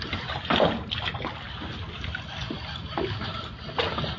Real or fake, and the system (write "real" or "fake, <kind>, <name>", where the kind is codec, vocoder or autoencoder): real